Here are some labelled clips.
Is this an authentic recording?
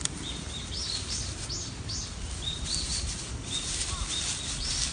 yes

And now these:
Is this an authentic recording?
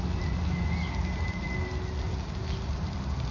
yes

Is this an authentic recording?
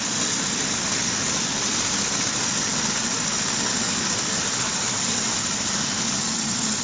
yes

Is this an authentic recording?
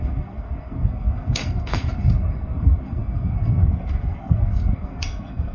no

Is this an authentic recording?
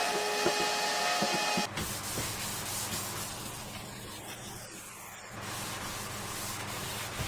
yes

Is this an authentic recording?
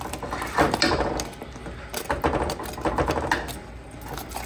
yes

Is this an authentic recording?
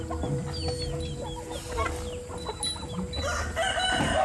yes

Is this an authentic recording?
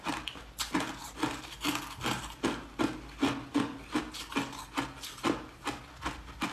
yes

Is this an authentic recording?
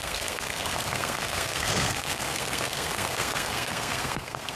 no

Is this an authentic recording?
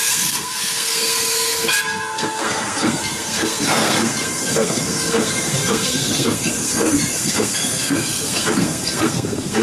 no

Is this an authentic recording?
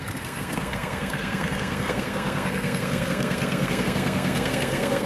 no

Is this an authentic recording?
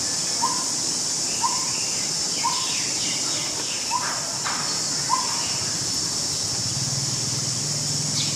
yes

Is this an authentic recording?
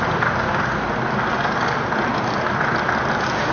yes